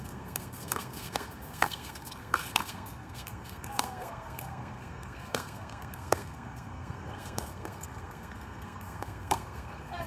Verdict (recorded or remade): remade